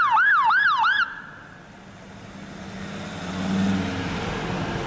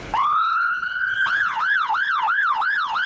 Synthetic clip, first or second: second